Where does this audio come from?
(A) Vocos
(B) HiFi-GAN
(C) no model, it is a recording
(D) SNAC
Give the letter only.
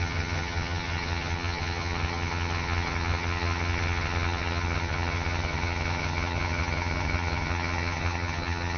B